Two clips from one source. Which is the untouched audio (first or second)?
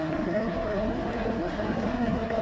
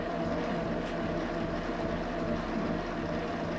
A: second